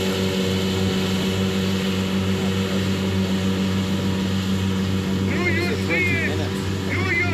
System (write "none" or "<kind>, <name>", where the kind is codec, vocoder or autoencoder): none